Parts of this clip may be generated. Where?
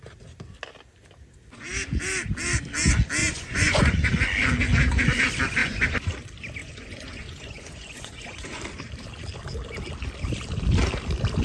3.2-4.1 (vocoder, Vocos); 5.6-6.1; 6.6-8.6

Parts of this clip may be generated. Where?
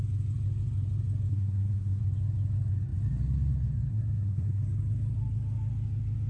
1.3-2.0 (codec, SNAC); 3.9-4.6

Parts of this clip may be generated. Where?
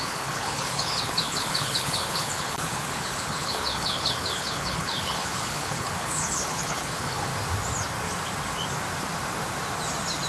0.0-7.3 (codec, HILCodec)